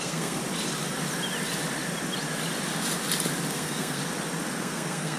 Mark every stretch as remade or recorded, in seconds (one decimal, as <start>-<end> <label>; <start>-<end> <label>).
0.0-0.4 remade; 0.4-3.5 recorded; 3.5-4.0 remade; 4.0-4.6 recorded; 4.6-5.2 remade